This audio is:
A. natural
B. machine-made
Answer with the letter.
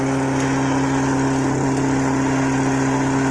A